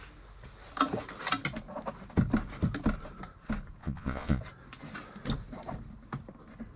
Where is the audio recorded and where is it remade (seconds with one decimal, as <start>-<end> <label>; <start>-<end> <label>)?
0.0-3.8 recorded; 3.8-4.4 remade; 4.4-6.8 recorded